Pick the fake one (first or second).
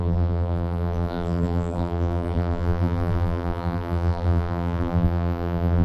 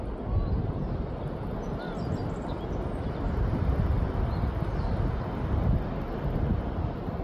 first